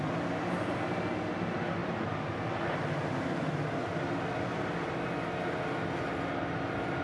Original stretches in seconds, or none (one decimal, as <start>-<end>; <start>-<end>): 0.0-1.8; 4.0-7.0